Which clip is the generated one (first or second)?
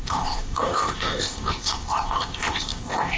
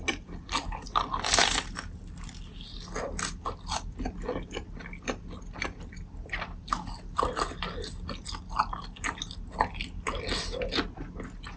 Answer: first